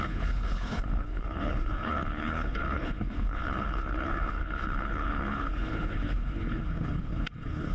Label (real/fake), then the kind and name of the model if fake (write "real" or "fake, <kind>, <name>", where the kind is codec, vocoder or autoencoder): fake, codec, HILCodec